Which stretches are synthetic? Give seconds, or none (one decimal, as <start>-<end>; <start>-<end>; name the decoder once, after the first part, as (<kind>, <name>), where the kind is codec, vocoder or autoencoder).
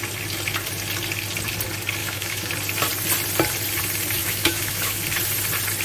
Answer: 2.0-2.5 (autoencoder, DAC-VAE); 4.2-5.0